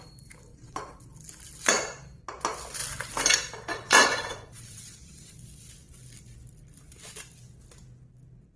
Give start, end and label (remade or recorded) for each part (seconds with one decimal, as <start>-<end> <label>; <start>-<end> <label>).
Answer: 0.0-0.5 recorded; 0.5-1.0 remade; 1.0-3.7 recorded; 3.7-5.3 remade; 5.3-8.6 recorded